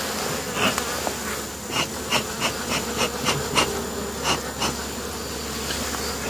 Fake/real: real